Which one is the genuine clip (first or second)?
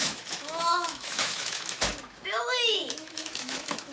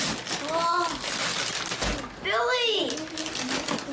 second